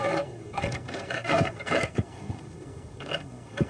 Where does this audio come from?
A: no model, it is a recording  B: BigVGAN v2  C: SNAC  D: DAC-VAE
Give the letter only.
C